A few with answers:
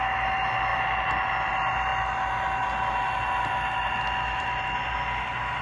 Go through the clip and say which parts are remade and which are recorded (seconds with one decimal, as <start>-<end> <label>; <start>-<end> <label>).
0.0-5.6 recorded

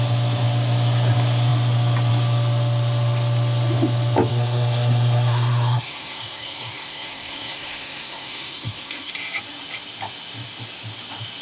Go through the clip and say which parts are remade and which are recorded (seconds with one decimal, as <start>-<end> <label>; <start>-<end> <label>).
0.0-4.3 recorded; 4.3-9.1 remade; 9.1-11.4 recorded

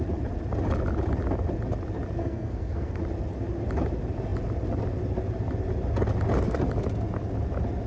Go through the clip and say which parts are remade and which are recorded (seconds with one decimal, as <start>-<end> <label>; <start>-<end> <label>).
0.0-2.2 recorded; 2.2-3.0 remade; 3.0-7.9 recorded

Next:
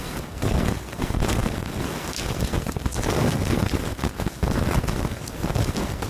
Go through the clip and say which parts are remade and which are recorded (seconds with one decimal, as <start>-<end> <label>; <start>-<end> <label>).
0.0-6.1 remade

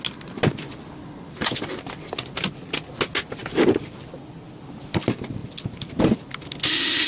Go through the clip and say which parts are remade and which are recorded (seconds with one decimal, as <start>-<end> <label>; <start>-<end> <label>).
0.0-7.1 recorded

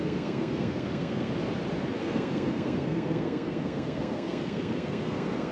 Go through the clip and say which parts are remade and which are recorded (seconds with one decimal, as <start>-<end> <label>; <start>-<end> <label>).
0.0-1.3 remade; 1.3-2.0 recorded; 2.0-5.5 remade

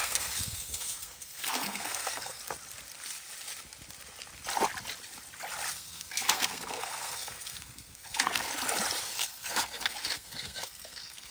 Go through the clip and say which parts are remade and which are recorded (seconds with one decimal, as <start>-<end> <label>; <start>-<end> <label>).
0.0-2.4 remade; 2.4-5.7 recorded; 5.7-8.5 remade; 8.5-9.0 recorded; 9.0-11.3 remade